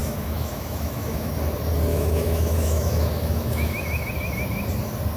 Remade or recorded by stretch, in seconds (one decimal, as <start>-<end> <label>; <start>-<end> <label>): 0.0-1.3 remade; 1.3-1.9 recorded; 1.9-4.1 remade; 4.1-5.2 recorded